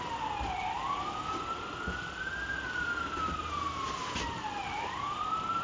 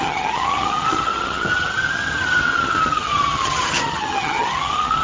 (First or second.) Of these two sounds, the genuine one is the first